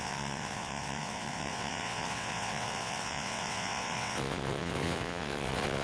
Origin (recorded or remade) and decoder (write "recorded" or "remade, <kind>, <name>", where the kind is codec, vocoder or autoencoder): remade, vocoder, WaveNeXt